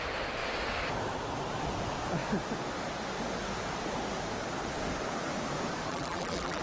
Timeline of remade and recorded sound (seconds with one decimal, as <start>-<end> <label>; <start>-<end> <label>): 0.0-5.9 recorded; 5.9-6.6 remade

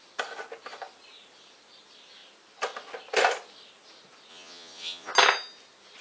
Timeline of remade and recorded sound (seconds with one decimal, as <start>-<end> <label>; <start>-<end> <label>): 0.0-4.3 recorded; 4.3-5.1 remade; 5.1-6.0 recorded

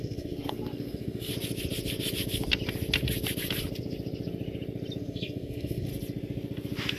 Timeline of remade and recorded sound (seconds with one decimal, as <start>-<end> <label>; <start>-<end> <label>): 0.0-1.3 remade; 1.3-5.0 recorded; 5.0-5.9 remade; 5.9-7.0 recorded